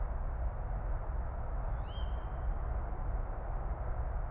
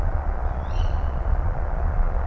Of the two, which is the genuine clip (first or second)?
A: first